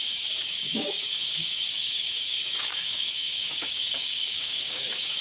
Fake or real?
fake